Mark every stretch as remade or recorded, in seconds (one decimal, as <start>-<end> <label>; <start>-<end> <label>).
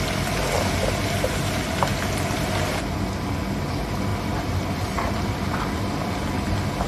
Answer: 0.0-6.9 recorded